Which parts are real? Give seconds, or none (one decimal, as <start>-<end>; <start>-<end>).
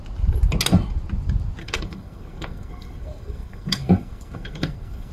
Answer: 0.0-1.6